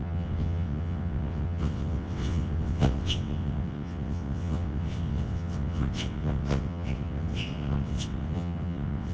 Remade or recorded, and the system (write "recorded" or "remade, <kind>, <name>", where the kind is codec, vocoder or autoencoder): remade, vocoder, WaveNeXt